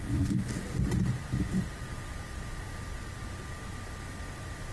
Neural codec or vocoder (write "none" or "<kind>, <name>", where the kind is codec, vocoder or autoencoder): none